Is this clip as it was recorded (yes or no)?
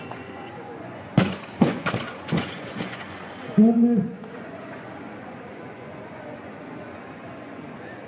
no